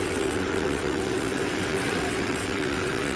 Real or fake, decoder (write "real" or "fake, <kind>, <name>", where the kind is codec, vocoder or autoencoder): fake, vocoder, WaveNeXt